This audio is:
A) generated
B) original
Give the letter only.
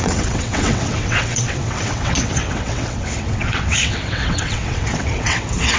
A